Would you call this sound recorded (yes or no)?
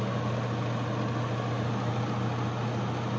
yes